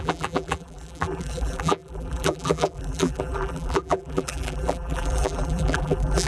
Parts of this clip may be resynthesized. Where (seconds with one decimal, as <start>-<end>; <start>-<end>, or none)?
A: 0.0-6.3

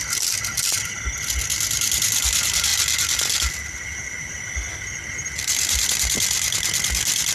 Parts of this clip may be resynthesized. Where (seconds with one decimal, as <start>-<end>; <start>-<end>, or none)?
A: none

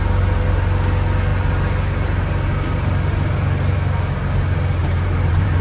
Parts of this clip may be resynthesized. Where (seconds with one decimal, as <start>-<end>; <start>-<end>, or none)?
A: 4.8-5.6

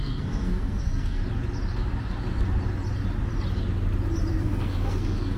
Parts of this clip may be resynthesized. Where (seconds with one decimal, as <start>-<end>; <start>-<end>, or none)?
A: 0.0-1.2; 4.4-5.4